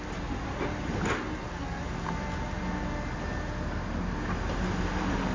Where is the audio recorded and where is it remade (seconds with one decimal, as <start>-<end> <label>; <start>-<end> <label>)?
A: 0.0-5.3 recorded